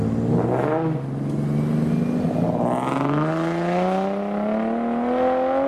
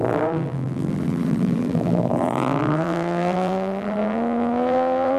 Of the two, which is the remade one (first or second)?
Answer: second